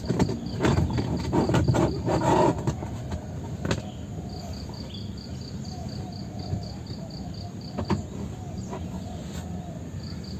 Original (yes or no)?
yes